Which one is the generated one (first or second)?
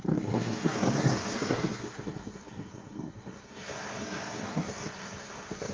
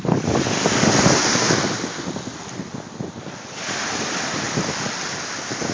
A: first